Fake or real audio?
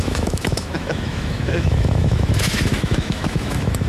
fake